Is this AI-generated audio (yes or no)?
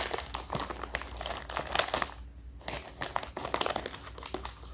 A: no